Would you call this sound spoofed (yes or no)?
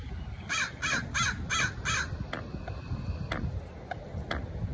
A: no